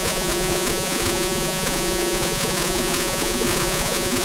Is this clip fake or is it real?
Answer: fake